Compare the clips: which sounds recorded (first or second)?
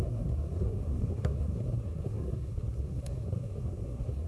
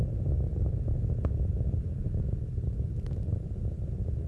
second